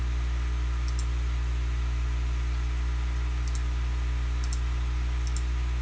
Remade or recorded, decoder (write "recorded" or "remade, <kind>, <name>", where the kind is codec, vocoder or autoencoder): recorded